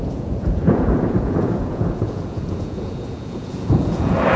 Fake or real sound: fake